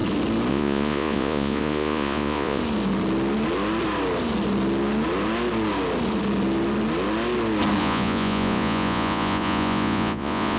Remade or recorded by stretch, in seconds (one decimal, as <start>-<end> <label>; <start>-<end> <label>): 0.0-0.5 recorded; 0.5-2.6 remade; 2.6-7.8 recorded; 7.8-10.6 remade